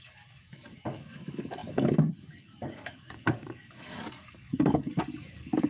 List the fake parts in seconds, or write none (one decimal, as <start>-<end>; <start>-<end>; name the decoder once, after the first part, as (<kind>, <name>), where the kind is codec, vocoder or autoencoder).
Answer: 0.0-5.7 (codec, DAC)